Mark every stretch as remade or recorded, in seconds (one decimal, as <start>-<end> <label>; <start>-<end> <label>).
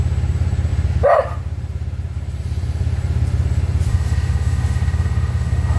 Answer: 0.0-3.9 recorded; 3.9-5.8 remade